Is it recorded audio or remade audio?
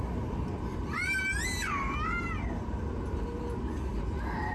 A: recorded